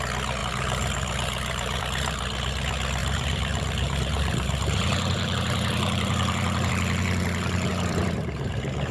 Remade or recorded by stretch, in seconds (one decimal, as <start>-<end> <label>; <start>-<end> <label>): 0.0-0.4 recorded; 0.4-1.8 remade; 1.8-3.0 recorded; 3.0-6.7 remade; 6.7-7.7 recorded; 7.7-8.9 remade